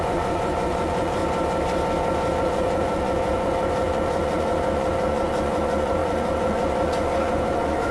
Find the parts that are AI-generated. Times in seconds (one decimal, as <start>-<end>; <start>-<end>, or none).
0.0-1.2; 2.4-7.9